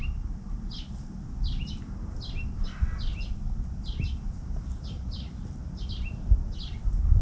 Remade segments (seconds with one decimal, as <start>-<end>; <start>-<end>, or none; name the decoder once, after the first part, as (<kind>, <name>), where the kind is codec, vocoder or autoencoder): none